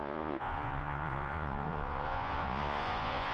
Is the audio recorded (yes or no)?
no